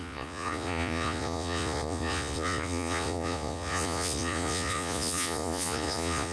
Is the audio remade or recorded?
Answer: remade